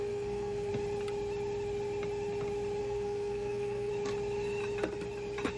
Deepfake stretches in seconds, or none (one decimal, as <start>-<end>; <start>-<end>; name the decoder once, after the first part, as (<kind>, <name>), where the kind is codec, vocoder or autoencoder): 0.0-0.7 (codec, SNAC); 2.8-3.9